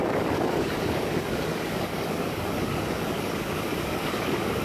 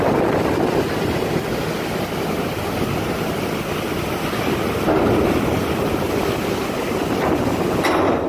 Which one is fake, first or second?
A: first